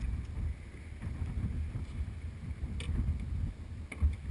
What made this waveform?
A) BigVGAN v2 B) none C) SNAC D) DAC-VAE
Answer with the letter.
B